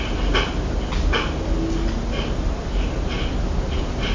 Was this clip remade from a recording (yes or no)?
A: no